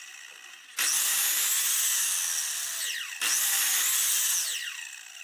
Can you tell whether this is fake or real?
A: real